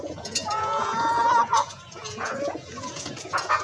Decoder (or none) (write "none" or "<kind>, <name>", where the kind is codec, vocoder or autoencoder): vocoder, Vocos